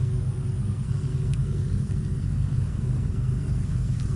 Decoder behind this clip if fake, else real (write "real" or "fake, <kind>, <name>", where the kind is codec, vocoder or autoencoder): fake, codec, SNAC